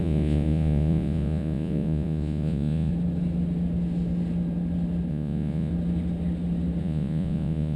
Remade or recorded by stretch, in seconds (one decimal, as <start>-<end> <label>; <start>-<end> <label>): 0.0-2.9 remade; 2.9-5.1 recorded; 5.1-5.7 remade; 5.7-6.8 recorded; 6.8-7.8 remade